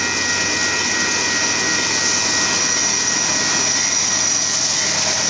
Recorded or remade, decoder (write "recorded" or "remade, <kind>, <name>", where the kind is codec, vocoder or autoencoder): recorded